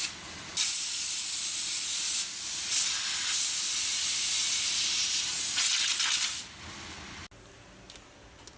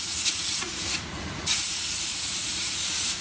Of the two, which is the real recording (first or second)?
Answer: first